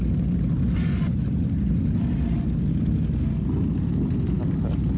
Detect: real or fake real